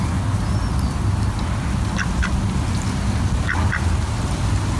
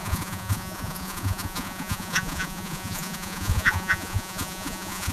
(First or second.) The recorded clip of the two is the first